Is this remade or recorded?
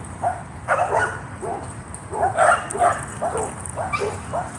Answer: recorded